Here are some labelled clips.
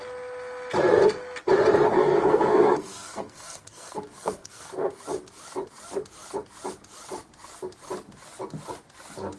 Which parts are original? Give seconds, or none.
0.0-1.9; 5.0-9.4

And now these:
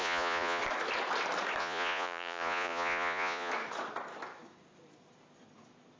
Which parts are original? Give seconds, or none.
0.6-1.6; 3.5-6.0

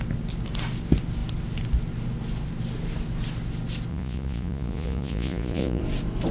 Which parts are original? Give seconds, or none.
0.0-3.9; 5.8-6.3